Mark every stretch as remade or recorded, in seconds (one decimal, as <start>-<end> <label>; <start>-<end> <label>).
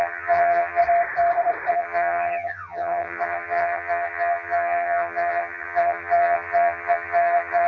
0.0-0.8 remade; 0.8-1.7 recorded; 1.7-7.7 remade